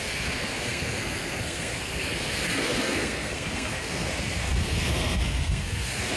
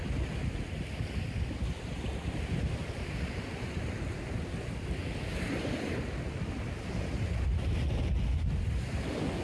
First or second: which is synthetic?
first